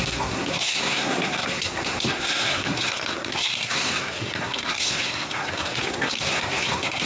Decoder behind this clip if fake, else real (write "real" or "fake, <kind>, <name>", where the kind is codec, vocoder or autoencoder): fake, codec, SNAC